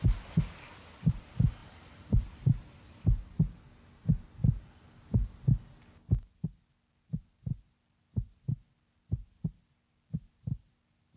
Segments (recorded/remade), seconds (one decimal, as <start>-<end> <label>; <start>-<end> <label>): 0.0-11.2 recorded